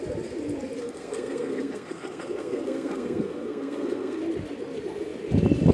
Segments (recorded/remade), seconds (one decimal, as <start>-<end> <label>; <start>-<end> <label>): 0.0-0.8 recorded; 0.8-4.2 remade; 4.2-5.7 recorded